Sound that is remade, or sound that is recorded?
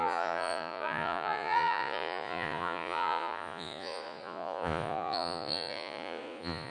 remade